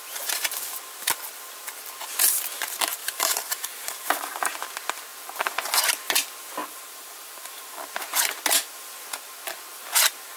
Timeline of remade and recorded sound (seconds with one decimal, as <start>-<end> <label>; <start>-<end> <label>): 0.0-3.0 recorded; 3.0-4.5 remade; 4.5-6.6 recorded; 6.6-7.8 remade; 7.8-10.4 recorded